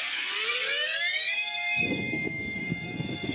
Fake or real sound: fake